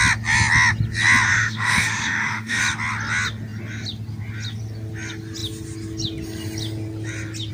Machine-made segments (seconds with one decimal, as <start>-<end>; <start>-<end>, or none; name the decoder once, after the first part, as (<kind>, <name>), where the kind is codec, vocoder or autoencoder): 1.3-2.6 (autoencoder, DAC-VAE)